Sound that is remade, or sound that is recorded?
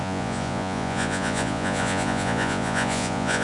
remade